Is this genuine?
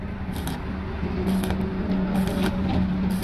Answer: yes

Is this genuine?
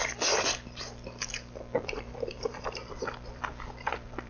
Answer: no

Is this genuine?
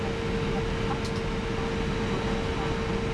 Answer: yes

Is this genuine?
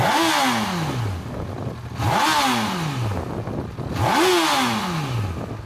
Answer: yes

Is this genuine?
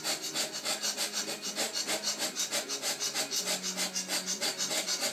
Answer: yes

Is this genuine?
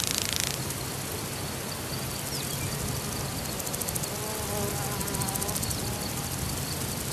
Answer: yes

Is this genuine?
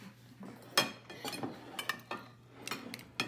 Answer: yes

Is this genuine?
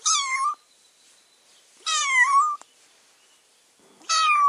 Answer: no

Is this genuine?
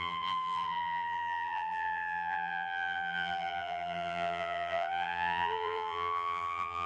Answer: no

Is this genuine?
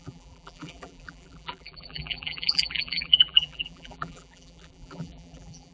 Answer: no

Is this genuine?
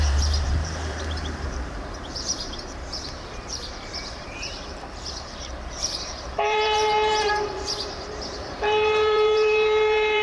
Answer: no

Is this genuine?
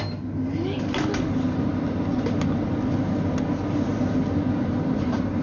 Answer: yes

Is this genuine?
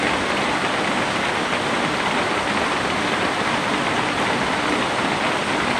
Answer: yes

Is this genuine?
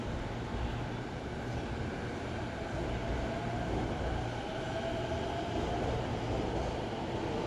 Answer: yes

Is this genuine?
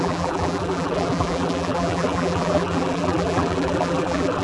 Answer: no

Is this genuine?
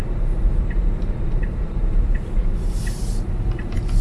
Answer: no